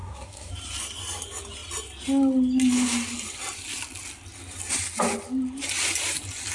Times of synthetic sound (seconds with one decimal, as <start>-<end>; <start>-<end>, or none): 0.0-0.5